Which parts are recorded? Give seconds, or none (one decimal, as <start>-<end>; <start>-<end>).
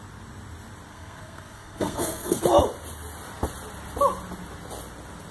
0.0-0.9; 2.4-5.3